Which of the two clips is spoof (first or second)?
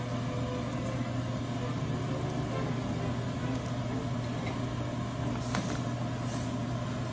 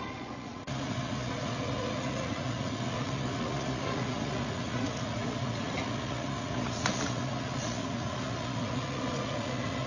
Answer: second